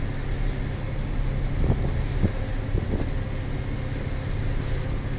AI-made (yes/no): no